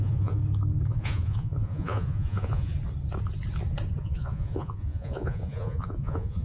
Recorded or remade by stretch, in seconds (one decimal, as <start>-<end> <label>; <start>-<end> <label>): 0.0-0.4 remade; 0.4-0.9 recorded; 0.9-2.7 remade; 2.7-4.0 recorded; 4.0-6.4 remade